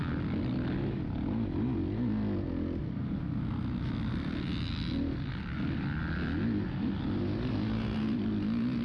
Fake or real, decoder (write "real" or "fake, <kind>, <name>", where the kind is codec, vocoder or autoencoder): real